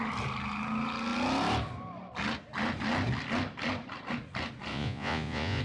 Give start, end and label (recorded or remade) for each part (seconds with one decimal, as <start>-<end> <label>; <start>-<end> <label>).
0.0-4.7 recorded; 4.7-5.6 remade

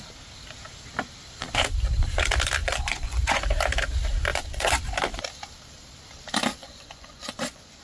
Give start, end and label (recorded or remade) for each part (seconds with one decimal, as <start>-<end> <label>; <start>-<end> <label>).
0.0-2.6 recorded; 2.6-3.4 remade; 3.4-4.3 recorded; 4.3-4.8 remade; 4.8-6.5 recorded; 6.5-7.8 remade

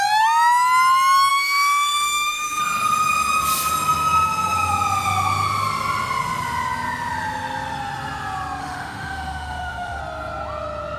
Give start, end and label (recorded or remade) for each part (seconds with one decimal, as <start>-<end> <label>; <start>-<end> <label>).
0.0-1.3 recorded; 1.3-2.6 remade; 2.6-8.6 recorded; 8.6-10.0 remade; 10.0-11.0 recorded

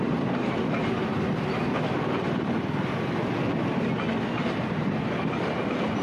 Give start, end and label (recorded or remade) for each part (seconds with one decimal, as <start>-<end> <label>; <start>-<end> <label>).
0.0-6.0 recorded

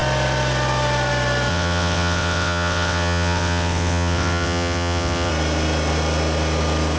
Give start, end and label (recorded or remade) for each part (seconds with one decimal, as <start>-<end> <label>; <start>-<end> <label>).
0.0-1.5 recorded; 1.5-5.3 remade; 5.3-7.0 recorded

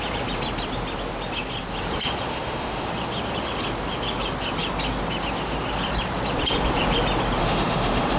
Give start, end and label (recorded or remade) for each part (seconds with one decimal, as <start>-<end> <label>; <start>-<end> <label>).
0.0-2.3 recorded; 2.3-2.9 remade; 2.9-7.4 recorded; 7.4-8.2 remade